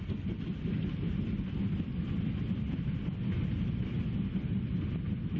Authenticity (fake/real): real